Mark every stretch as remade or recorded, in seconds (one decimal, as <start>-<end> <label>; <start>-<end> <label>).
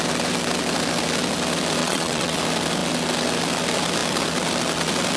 0.0-1.8 recorded; 1.8-2.4 remade; 2.4-5.2 recorded